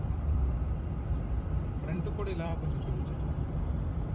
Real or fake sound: fake